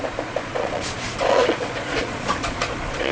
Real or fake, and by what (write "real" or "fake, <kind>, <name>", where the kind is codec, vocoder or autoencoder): fake, vocoder, Vocos